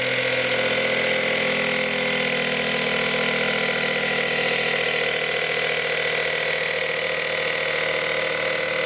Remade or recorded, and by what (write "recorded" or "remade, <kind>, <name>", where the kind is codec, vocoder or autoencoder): recorded